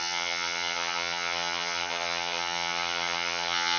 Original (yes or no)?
no